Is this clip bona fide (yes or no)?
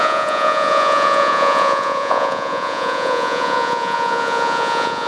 no